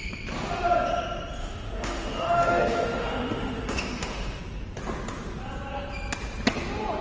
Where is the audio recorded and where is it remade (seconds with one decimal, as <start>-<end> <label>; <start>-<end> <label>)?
0.0-1.4 recorded; 1.4-4.4 remade; 4.4-7.0 recorded